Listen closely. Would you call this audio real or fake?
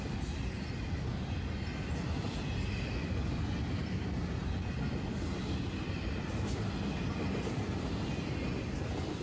real